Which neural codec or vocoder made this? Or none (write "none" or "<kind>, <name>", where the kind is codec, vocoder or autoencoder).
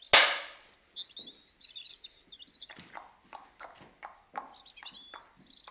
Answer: none